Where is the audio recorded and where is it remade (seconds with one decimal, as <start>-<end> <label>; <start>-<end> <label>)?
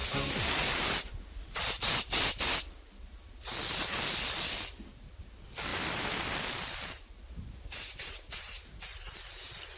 0.0-5.7 recorded; 5.7-8.1 remade; 8.1-9.8 recorded